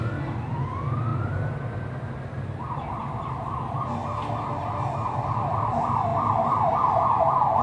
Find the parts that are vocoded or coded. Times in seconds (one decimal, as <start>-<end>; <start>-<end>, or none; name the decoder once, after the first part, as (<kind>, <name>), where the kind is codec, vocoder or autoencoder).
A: none

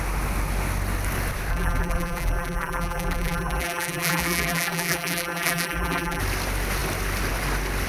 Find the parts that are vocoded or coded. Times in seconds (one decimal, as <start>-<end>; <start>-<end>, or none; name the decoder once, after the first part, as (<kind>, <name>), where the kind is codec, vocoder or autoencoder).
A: 1.5-6.2 (vocoder, BigVGAN v2)

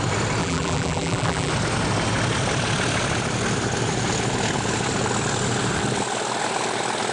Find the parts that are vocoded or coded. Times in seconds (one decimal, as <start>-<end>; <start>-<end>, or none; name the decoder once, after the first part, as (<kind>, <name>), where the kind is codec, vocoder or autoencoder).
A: 0.4-1.5 (vocoder, BigVGAN v2)